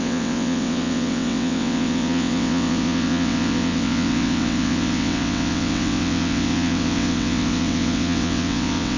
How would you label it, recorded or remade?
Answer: remade